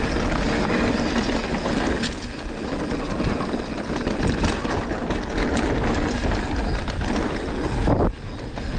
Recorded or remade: recorded